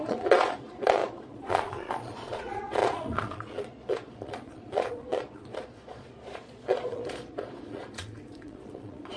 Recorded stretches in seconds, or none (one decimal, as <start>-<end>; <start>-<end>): none